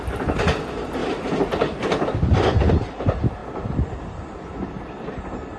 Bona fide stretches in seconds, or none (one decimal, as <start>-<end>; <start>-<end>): 0.0-5.6